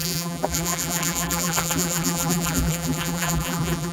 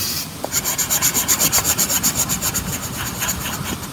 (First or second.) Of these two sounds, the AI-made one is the first